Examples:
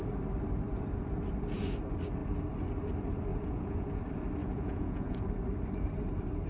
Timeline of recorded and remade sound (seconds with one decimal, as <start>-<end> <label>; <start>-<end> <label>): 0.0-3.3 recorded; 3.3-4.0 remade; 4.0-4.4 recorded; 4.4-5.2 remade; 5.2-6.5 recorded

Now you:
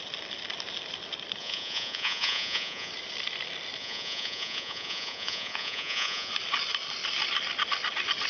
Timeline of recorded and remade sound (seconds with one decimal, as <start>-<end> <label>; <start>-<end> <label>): 0.0-1.4 recorded; 1.4-2.9 remade; 2.9-3.8 recorded; 3.8-6.3 remade; 6.3-8.3 recorded

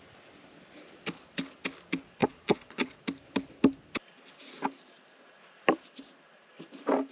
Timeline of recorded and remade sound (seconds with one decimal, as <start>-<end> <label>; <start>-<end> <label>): 0.0-2.2 recorded; 2.2-3.0 remade; 3.0-7.1 recorded

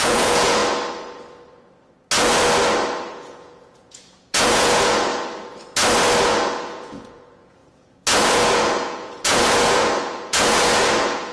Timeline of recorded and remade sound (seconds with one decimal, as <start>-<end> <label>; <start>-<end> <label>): 0.0-0.6 remade; 0.6-3.1 recorded; 3.1-5.1 remade; 5.1-6.2 recorded; 6.2-11.3 remade

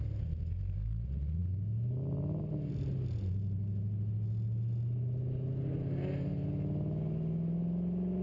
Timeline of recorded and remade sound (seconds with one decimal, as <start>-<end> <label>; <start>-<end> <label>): 0.0-8.2 recorded